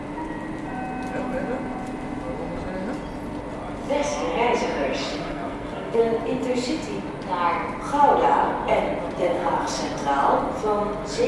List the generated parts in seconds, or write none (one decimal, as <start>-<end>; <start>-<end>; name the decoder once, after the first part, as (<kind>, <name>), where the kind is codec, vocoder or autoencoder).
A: 5.0-6.0 (codec, SNAC)